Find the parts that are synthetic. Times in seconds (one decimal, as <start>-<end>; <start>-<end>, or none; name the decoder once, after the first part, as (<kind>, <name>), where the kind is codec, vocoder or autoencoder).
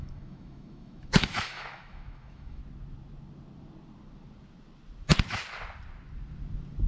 0.0-2.6 (autoencoder, DAC-VAE)